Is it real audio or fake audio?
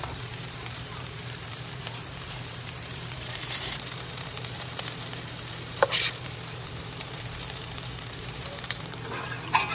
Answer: fake